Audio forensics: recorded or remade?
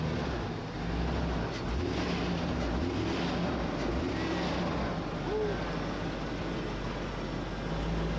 recorded